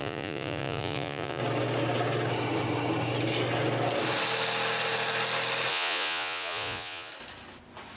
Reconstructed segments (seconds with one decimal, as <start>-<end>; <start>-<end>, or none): 0.0-1.4; 5.7-7.1